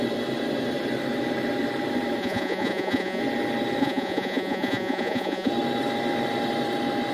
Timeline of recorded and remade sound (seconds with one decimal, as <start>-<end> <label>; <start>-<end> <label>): 0.0-2.2 recorded; 2.2-3.2 remade; 3.2-3.8 recorded; 3.8-5.5 remade; 5.5-7.1 recorded